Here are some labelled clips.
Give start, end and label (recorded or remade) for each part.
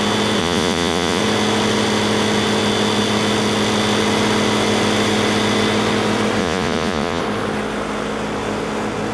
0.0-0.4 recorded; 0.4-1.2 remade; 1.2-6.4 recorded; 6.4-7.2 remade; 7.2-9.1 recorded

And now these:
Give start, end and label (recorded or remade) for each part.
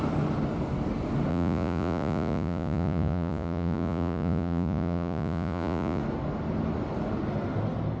0.0-1.3 recorded; 1.3-6.0 remade; 6.0-8.0 recorded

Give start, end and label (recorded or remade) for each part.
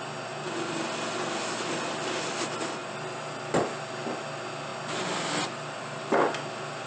0.0-6.9 recorded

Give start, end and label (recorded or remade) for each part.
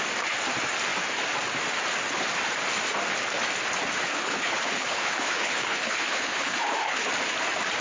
0.0-4.1 recorded; 4.1-7.1 remade; 7.1-7.8 recorded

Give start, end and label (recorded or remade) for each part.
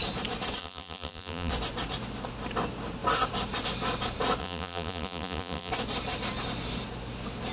0.0-0.6 recorded; 0.6-1.5 remade; 1.5-4.4 recorded; 4.4-5.7 remade; 5.7-7.5 recorded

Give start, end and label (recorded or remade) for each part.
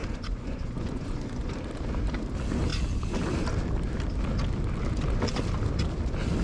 0.0-1.5 remade; 1.5-6.4 recorded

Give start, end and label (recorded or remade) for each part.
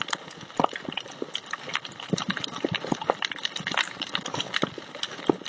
0.0-5.5 recorded